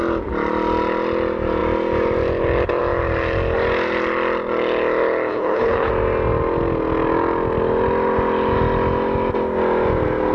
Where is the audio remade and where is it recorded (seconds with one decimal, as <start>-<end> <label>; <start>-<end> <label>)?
0.0-5.3 recorded; 5.3-5.9 remade; 5.9-10.3 recorded